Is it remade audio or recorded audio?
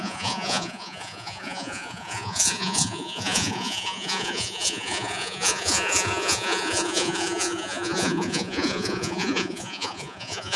remade